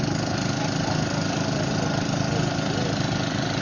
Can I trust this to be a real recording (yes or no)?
yes